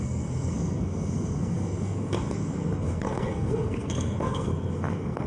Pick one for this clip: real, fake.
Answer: fake